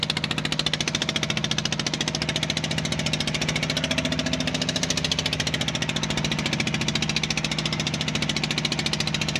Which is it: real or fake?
real